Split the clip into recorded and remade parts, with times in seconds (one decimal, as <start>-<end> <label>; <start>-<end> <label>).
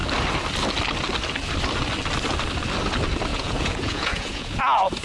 0.0-3.3 recorded; 3.3-4.6 remade; 4.6-5.0 recorded